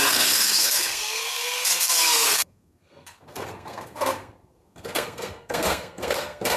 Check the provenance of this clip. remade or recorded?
remade